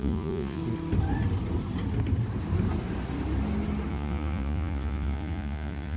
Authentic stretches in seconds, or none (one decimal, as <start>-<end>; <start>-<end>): 0.6-3.9